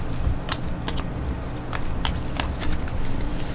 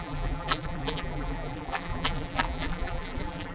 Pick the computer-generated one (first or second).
second